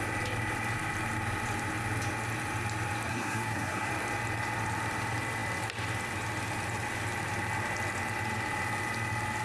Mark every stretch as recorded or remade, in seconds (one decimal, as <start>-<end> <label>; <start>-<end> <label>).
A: 0.0-3.1 recorded; 3.1-3.9 remade; 3.9-9.4 recorded